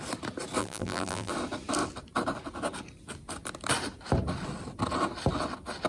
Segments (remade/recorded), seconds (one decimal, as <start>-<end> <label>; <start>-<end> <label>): 0.0-0.6 recorded; 0.6-1.3 remade; 1.3-5.9 recorded